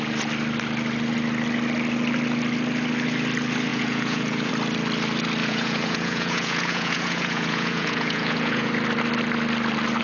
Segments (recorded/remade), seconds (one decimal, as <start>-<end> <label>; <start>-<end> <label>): 0.0-3.7 recorded; 3.7-4.5 remade; 4.5-5.4 recorded; 5.4-8.7 remade; 8.7-10.0 recorded